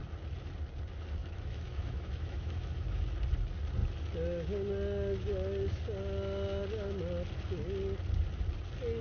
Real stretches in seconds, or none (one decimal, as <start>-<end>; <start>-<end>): 0.0-1.2; 3.0-9.0